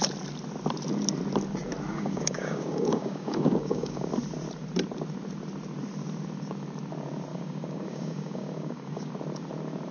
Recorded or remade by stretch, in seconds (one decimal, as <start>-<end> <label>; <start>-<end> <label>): 0.0-1.9 recorded; 1.9-4.1 remade; 4.1-7.3 recorded; 7.3-9.1 remade; 9.1-9.9 recorded